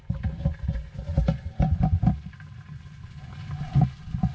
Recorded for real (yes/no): yes